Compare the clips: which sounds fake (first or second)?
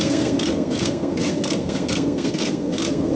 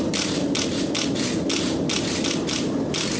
first